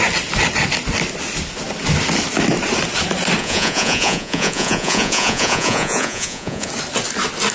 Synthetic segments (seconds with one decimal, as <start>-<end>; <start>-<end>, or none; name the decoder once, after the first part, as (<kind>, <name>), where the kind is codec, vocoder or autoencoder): 3.4-6.7 (vocoder, Vocos)